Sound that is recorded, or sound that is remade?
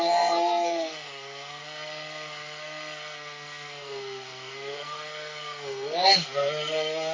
remade